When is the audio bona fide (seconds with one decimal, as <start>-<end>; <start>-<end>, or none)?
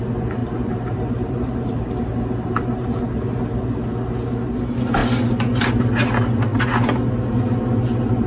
0.0-0.4; 3.0-8.3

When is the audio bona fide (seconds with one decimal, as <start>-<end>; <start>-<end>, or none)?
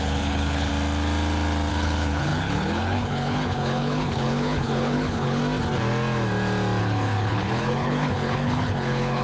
0.7-1.7; 5.4-6.8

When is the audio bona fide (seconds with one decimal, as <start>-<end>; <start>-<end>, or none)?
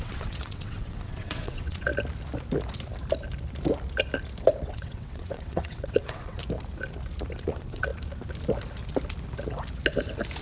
1.9-4.6; 6.4-7.4; 7.9-10.4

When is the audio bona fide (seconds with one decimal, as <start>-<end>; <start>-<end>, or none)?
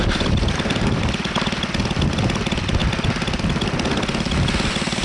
1.8-5.0